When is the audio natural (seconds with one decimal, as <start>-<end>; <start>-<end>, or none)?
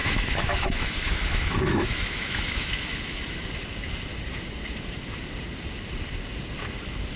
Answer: 3.2-7.2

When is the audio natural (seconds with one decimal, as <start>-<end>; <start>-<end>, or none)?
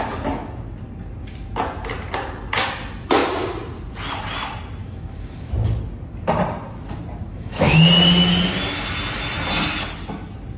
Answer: 0.0-4.8; 5.5-7.3; 7.9-10.6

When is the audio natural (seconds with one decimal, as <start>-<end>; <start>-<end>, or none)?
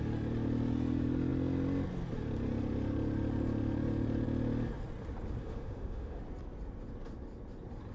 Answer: 0.0-5.4; 6.2-7.9